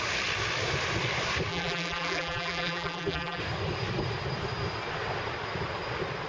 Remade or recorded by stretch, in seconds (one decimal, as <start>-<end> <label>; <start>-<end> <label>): 0.0-1.5 recorded; 1.5-3.4 remade; 3.4-6.3 recorded